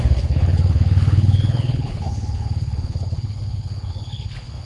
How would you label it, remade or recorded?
remade